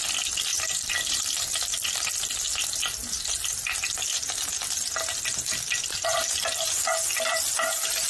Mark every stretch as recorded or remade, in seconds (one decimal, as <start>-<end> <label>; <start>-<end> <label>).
0.0-6.1 recorded; 6.1-6.8 remade; 6.8-8.1 recorded